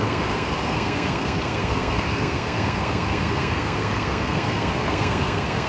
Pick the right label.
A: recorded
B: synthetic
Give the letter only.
B